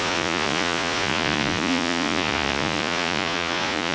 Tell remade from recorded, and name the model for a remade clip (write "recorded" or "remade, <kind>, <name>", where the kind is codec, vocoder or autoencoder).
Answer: remade, vocoder, Vocos